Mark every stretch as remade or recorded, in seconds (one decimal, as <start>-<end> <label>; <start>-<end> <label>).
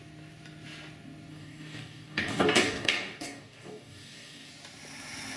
0.0-1.3 recorded; 1.3-4.5 remade; 4.5-5.4 recorded